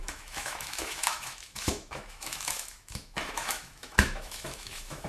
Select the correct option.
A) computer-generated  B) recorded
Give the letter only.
A